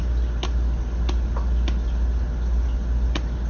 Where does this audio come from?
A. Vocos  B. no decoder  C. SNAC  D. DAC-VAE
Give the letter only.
B